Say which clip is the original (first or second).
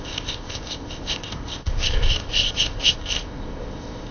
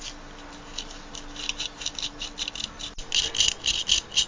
second